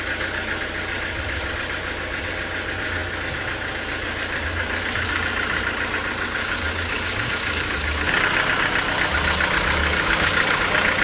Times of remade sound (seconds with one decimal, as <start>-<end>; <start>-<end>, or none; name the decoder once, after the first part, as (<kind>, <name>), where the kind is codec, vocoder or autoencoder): 6.4-8.2 (codec, DAC); 9.8-10.6

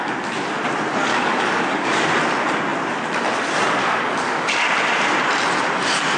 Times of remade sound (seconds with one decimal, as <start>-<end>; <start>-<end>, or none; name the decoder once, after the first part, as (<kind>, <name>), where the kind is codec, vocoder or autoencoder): 1.1-2.1 (codec, DAC); 3.8-4.7

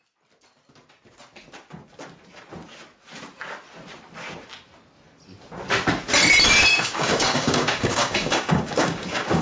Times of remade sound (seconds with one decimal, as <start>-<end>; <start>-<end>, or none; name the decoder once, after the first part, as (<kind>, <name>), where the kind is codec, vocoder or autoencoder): 6.7-9.4 (codec, DAC)

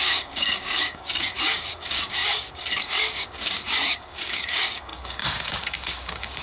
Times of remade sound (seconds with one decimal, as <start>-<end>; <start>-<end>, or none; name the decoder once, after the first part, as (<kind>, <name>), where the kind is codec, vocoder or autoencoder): 0.0-6.4 (codec, DAC)

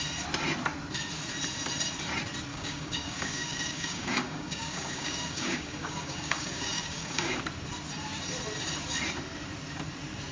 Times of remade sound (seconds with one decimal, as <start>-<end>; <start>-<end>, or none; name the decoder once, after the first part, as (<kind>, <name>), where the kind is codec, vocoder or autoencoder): 2.5-7.4 (codec, DAC)